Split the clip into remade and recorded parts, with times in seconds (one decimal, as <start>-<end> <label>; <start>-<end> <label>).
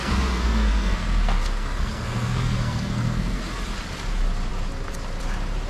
0.0-3.4 remade; 3.4-5.7 recorded